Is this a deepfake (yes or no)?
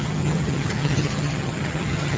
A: yes